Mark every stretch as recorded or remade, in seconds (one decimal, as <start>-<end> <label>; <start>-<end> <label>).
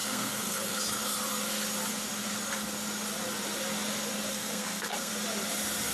0.0-0.8 remade; 0.8-4.3 recorded; 4.3-5.1 remade; 5.1-5.9 recorded